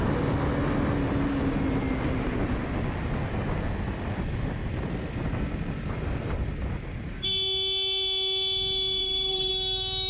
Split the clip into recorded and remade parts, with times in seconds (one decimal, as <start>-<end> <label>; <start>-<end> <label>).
0.0-9.0 recorded; 9.0-9.5 remade; 9.5-10.1 recorded